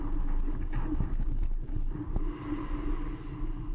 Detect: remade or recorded recorded